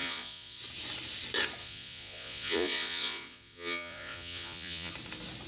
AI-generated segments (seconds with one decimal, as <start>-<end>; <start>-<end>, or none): 0.0-0.6; 1.6-4.9